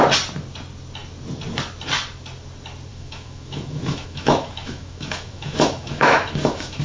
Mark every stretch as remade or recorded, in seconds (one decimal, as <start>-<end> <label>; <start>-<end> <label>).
0.0-2.9 recorded; 2.9-6.8 remade